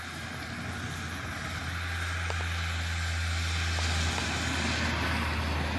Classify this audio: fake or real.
real